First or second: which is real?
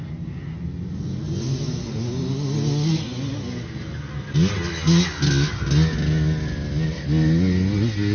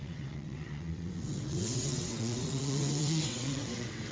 first